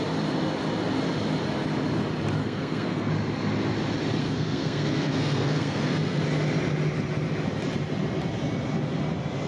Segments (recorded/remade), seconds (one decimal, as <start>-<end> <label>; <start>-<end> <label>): 0.0-2.4 recorded; 2.4-3.1 remade; 3.1-4.2 recorded; 4.2-6.2 remade; 6.2-9.5 recorded